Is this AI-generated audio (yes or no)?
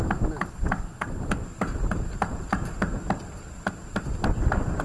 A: no